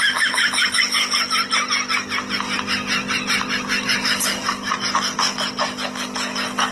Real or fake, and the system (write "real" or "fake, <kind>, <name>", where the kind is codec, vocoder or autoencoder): real